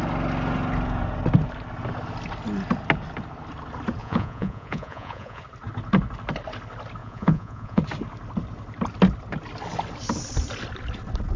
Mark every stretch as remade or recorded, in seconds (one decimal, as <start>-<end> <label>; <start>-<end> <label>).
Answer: 0.0-4.0 recorded; 4.0-5.4 remade; 5.4-7.0 recorded; 7.0-7.8 remade; 7.8-11.4 recorded